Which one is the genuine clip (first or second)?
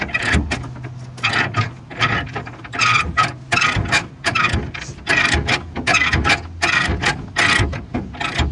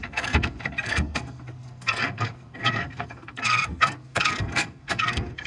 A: first